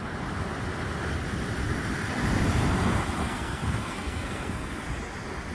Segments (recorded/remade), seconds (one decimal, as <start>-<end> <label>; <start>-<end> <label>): 0.0-3.2 recorded; 3.2-4.9 remade; 4.9-5.5 recorded